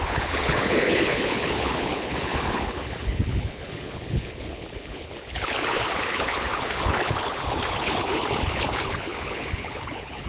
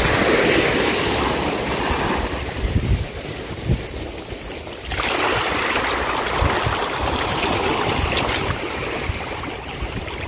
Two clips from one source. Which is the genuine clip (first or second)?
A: second